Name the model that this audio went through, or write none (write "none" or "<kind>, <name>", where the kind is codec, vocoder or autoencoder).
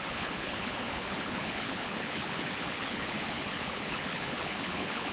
codec, HILCodec